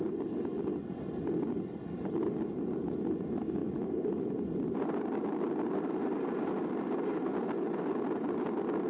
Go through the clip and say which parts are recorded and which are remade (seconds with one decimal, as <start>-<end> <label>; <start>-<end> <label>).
0.0-6.6 recorded; 6.6-7.3 remade; 7.3-8.9 recorded